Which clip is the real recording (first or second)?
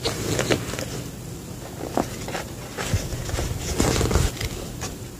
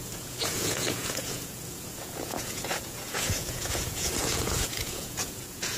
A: first